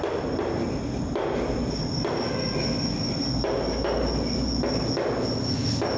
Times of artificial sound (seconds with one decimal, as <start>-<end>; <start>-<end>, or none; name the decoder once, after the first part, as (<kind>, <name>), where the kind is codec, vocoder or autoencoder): none